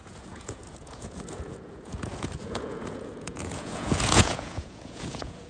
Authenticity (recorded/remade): remade